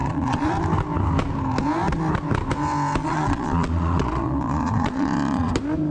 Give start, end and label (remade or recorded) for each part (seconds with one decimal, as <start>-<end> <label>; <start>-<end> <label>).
0.0-0.5 remade; 0.5-3.0 recorded; 3.0-5.5 remade; 5.5-5.9 recorded